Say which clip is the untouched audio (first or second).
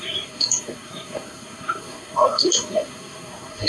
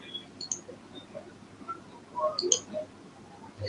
second